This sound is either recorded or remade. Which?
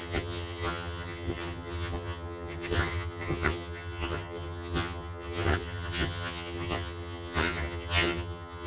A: remade